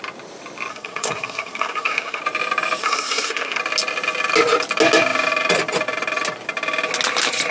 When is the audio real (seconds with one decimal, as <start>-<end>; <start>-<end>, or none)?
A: 0.0-0.7; 2.2-2.8; 3.6-7.5